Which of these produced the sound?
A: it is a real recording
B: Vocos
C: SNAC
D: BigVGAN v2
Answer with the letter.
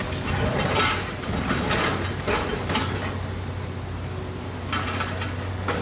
A